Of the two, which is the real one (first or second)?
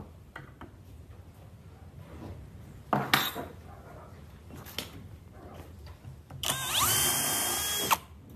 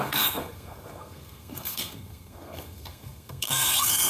first